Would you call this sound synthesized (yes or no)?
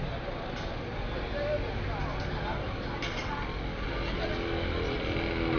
no